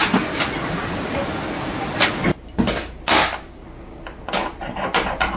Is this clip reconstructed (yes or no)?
no